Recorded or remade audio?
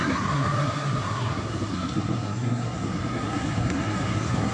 remade